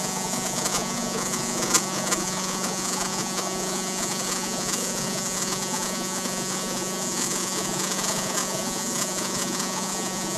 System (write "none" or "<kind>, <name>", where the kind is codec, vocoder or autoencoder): vocoder, Vocos